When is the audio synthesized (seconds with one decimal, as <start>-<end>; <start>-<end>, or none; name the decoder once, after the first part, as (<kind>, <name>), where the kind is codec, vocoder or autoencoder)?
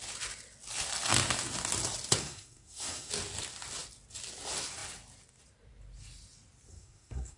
2.2-3.1 (codec, SNAC); 6.7-7.4